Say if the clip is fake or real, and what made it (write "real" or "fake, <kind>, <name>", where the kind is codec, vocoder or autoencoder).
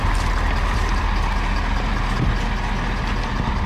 real